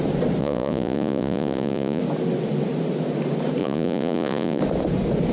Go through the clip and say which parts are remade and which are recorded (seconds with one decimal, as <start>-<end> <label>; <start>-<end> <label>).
0.0-0.4 recorded; 0.4-2.0 remade; 2.0-3.6 recorded; 3.6-4.6 remade; 4.6-5.3 recorded